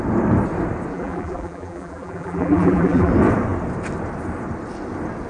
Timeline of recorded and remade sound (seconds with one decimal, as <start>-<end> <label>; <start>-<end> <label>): 0.0-0.9 recorded; 0.9-3.1 remade; 3.1-5.3 recorded